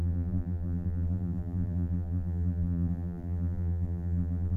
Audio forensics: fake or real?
fake